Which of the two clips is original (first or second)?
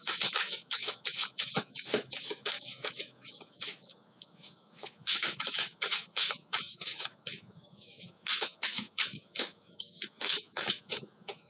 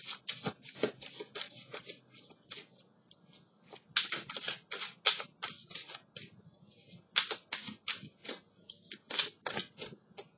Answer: second